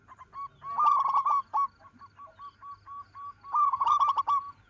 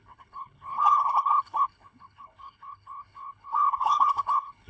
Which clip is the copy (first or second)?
second